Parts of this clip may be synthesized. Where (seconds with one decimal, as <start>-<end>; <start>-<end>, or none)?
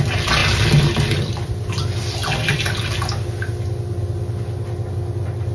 0.4-1.7